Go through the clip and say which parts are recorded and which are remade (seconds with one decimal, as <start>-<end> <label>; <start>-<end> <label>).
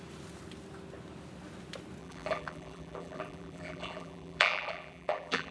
0.0-2.0 recorded; 2.0-5.5 remade